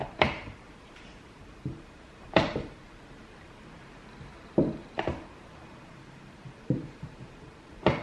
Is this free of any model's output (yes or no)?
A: no